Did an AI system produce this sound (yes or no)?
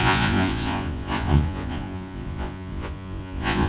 yes